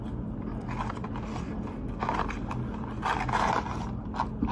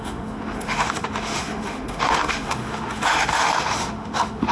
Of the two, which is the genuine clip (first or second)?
first